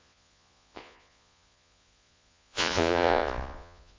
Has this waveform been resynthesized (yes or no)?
yes